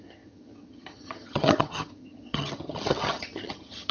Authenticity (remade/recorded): remade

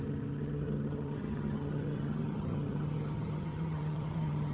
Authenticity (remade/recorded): remade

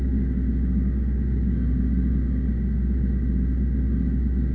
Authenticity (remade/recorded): recorded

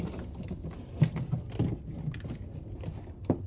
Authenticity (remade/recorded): recorded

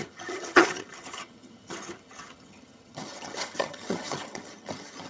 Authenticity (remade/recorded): remade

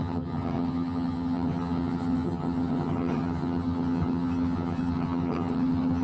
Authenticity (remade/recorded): remade